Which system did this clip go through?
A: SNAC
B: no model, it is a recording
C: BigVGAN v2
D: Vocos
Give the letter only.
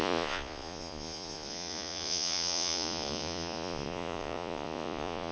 D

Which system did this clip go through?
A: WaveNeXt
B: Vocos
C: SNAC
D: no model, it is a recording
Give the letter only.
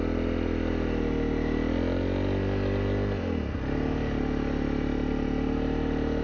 D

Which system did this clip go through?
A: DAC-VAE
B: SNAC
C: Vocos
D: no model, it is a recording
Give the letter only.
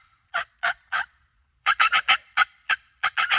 C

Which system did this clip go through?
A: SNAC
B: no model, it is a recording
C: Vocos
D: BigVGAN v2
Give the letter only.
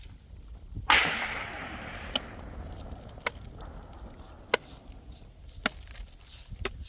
B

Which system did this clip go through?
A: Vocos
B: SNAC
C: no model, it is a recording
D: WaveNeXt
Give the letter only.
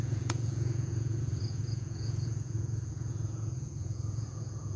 A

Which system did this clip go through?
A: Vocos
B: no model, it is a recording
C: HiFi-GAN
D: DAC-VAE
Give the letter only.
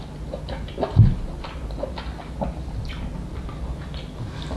B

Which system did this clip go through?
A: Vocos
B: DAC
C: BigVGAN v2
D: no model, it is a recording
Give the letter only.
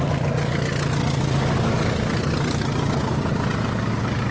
D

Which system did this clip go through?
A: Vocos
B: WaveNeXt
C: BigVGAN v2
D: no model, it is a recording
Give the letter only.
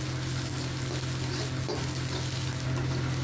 D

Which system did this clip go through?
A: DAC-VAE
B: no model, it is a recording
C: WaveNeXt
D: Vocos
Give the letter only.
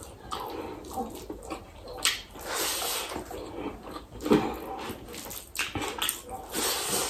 B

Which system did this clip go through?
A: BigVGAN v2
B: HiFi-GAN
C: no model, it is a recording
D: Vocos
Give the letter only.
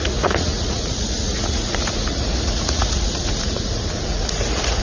D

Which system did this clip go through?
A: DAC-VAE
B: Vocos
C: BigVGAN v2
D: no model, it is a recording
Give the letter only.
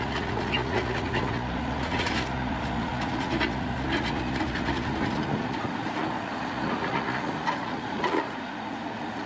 B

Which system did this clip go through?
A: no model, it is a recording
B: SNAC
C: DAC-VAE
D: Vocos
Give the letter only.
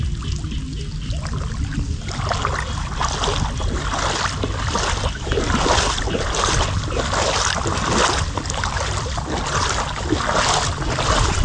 A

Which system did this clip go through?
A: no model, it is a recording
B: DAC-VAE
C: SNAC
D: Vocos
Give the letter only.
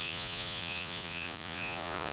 D